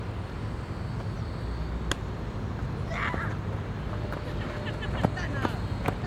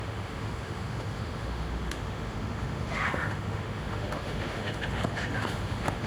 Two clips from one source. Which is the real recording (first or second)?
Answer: first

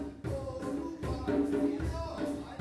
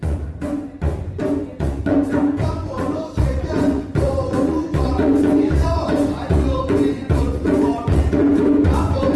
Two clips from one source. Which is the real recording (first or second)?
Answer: first